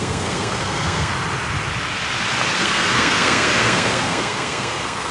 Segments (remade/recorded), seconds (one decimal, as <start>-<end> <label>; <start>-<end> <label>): 0.0-1.1 remade; 1.1-2.5 recorded; 2.5-5.1 remade